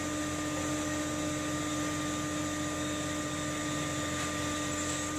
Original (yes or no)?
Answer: yes